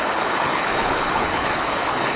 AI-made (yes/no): yes